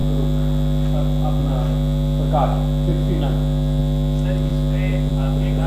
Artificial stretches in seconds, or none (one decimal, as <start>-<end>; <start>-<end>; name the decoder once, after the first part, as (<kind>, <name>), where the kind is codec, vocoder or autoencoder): none